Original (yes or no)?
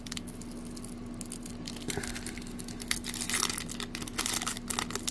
yes